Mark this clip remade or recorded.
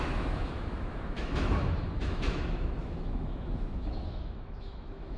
remade